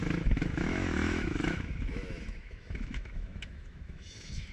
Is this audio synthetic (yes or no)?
yes